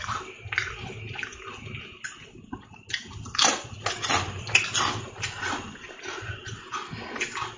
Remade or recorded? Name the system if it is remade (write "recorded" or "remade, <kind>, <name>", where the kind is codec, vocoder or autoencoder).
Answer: recorded